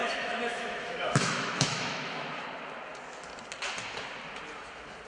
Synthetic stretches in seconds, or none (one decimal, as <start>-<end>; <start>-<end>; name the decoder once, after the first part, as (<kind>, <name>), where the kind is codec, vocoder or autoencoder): 0.0-2.3 (autoencoder, DAC-VAE)